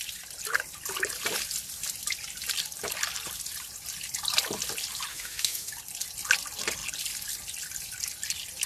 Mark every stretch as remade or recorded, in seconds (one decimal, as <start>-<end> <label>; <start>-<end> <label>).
0.0-5.1 recorded; 5.1-5.7 remade; 5.7-8.7 recorded